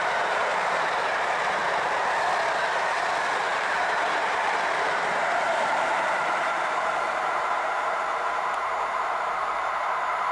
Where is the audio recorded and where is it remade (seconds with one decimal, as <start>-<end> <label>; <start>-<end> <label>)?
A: 0.0-1.6 remade; 1.6-2.8 recorded; 2.8-10.3 remade